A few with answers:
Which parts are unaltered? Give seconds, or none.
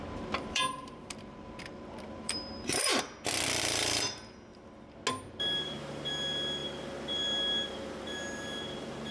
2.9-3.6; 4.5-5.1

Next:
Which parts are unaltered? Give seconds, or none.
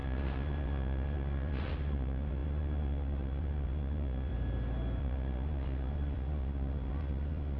4.3-5.0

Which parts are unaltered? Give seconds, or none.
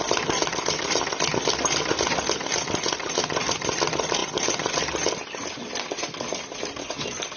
0.0-7.4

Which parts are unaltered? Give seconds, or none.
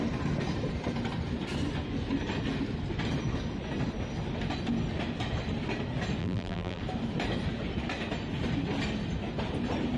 0.0-6.2; 6.8-10.0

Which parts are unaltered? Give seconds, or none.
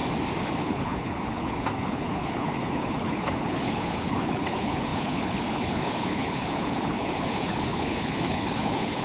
0.0-0.6